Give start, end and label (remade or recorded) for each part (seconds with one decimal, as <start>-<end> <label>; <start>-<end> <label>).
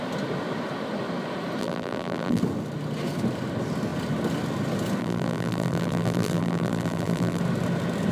0.0-1.6 recorded; 1.6-2.4 remade; 2.4-5.0 recorded; 5.0-7.4 remade; 7.4-8.1 recorded